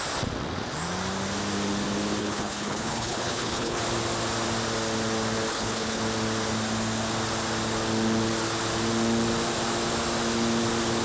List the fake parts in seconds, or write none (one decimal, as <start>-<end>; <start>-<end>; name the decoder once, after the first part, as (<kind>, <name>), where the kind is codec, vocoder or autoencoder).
2.2-3.8 (codec, HILCodec); 5.5-6.0